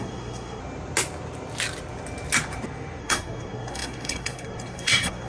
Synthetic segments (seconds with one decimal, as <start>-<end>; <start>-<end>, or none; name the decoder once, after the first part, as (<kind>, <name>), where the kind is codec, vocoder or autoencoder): 0.0-0.6 (codec, SNAC); 3.0-5.3